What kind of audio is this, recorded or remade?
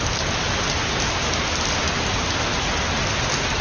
recorded